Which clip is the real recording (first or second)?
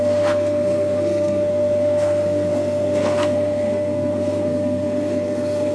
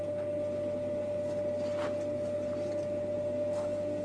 second